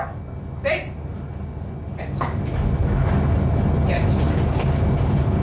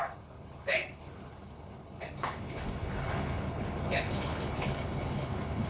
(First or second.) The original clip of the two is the first